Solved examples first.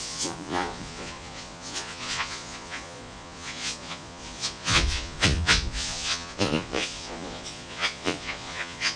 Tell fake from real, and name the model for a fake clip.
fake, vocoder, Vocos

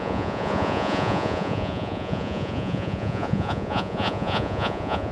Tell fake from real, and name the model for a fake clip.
fake, vocoder, Vocos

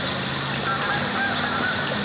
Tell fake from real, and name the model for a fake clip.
real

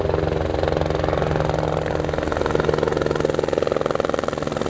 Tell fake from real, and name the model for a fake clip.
real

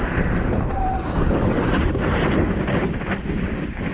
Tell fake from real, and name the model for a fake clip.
real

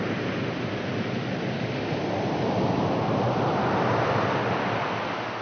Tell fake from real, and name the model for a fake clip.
real